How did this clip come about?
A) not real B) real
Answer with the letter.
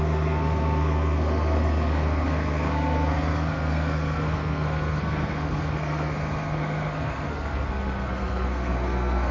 A